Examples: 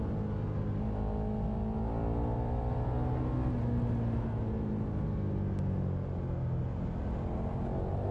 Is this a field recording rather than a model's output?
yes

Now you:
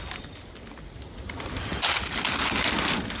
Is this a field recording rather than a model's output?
yes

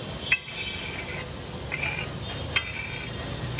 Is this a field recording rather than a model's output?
yes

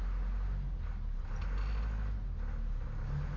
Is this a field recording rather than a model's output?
yes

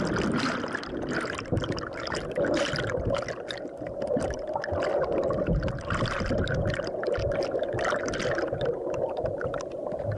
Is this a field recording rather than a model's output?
yes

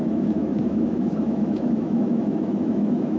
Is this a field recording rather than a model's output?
no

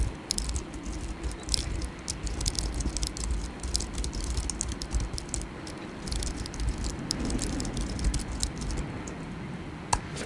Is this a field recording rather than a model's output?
yes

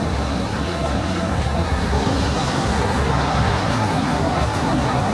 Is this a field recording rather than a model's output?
no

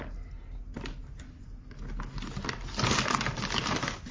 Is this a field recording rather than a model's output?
yes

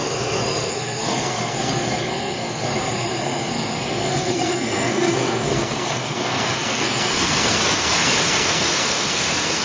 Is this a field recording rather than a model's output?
no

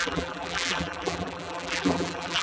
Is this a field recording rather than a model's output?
no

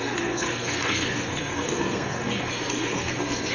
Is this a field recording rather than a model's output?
no